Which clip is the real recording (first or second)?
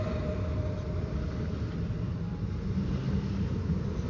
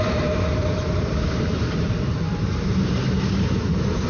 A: first